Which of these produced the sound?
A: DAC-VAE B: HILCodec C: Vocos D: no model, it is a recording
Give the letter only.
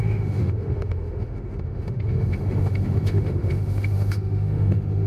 A